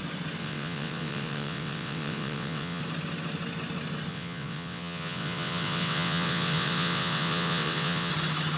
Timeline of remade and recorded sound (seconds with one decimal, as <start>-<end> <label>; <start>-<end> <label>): 0.0-0.4 recorded; 0.4-2.8 remade; 2.8-4.1 recorded; 4.1-8.1 remade; 8.1-8.6 recorded